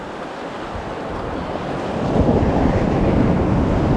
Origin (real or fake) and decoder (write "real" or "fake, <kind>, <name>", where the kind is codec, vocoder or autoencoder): real